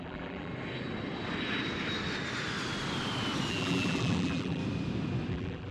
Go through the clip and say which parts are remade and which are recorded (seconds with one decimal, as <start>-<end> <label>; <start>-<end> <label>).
0.0-0.5 remade; 0.5-3.5 recorded; 3.5-4.6 remade; 4.6-5.3 recorded; 5.3-5.7 remade